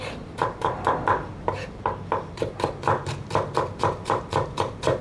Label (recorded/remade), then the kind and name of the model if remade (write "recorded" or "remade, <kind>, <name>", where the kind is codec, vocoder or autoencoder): remade, vocoder, BigVGAN v2